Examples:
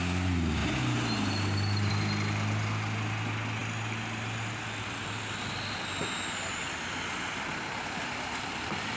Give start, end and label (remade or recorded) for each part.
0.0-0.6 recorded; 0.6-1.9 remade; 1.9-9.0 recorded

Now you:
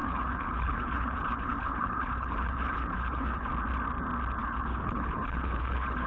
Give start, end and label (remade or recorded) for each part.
0.0-3.5 remade; 3.5-4.4 recorded; 4.4-6.1 remade

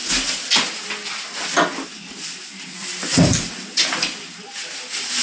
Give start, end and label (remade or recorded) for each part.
0.0-5.2 recorded

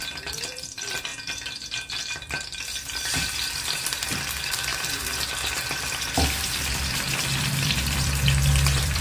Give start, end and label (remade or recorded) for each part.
0.0-1.1 remade; 1.1-1.8 recorded; 1.8-9.0 remade

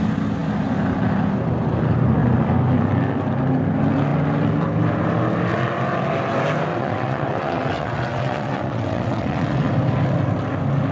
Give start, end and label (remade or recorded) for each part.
0.0-6.7 recorded; 6.7-9.7 remade; 9.7-10.9 recorded

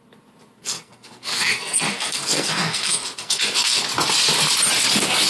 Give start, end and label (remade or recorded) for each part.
0.0-0.6 recorded; 0.6-3.8 remade; 3.8-5.3 recorded